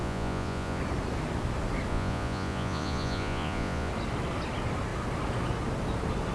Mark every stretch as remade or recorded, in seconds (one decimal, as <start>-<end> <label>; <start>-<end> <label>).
0.0-0.8 remade; 0.8-1.9 recorded; 1.9-3.9 remade; 3.9-6.3 recorded